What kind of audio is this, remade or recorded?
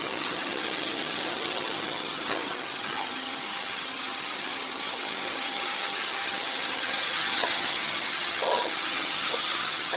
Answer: remade